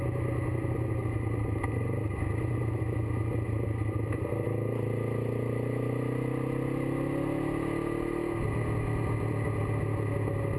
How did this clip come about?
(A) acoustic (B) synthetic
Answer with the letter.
A